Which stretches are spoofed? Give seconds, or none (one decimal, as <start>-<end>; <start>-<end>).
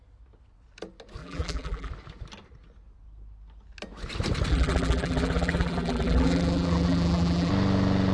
1.2-1.9; 4.5-7.5